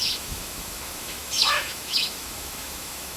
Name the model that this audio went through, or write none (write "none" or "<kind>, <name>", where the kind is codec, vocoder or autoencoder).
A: autoencoder, DAC-VAE